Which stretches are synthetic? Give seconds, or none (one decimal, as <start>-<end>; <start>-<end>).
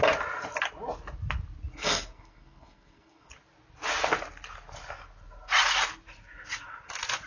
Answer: 1.8-3.3